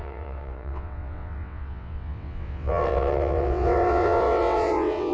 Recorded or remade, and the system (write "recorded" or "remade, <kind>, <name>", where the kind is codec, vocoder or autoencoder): remade, vocoder, WaveNeXt